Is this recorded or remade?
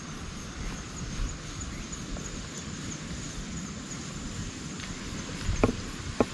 recorded